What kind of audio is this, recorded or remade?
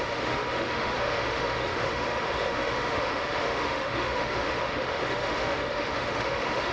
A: remade